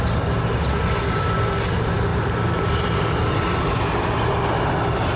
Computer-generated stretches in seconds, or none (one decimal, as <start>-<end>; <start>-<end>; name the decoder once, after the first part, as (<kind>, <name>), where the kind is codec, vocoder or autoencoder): none